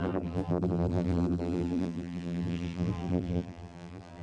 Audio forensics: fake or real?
fake